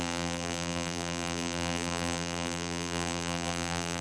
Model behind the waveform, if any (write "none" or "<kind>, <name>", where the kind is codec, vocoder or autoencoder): vocoder, BigVGAN v2